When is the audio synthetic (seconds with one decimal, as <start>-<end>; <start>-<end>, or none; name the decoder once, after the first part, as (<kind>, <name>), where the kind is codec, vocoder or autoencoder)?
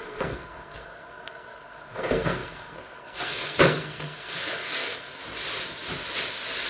0.0-5.2 (codec, SNAC)